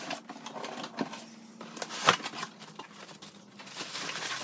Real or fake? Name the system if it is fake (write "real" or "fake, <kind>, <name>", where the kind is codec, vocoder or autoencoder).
real